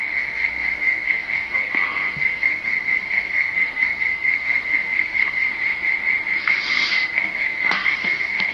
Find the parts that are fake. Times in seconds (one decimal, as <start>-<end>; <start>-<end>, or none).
0.0-5.5; 6.4-8.5